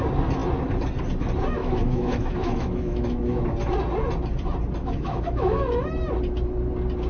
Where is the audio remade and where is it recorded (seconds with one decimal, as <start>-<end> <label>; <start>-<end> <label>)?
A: 0.0-1.6 recorded; 1.6-3.4 remade; 3.4-4.8 recorded; 4.8-5.8 remade; 5.8-7.1 recorded

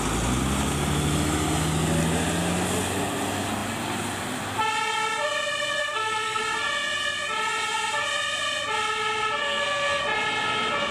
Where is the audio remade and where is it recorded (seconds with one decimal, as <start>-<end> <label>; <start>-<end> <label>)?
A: 0.0-5.8 recorded; 5.8-6.4 remade; 6.4-9.4 recorded; 9.4-10.0 remade; 10.0-10.9 recorded

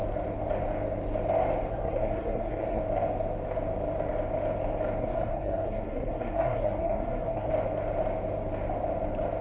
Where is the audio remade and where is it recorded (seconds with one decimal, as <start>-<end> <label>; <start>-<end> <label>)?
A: 0.0-1.7 recorded; 1.7-2.8 remade; 2.8-5.0 recorded; 5.0-7.5 remade; 7.5-9.4 recorded

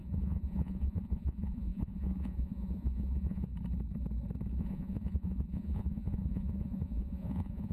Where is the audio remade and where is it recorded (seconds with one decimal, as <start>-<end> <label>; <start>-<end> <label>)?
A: 0.0-3.5 remade; 3.5-4.6 recorded; 4.6-7.7 remade

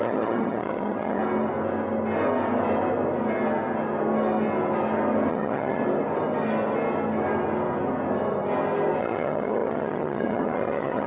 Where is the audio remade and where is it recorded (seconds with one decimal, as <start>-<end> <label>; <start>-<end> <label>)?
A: 0.0-1.2 remade; 1.2-5.3 recorded; 5.3-5.8 remade; 5.8-9.0 recorded; 9.0-11.1 remade

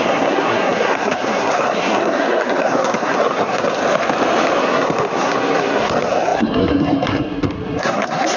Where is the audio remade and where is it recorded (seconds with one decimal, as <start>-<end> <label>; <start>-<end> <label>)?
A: 0.0-3.8 remade; 3.8-4.6 recorded; 4.6-8.4 remade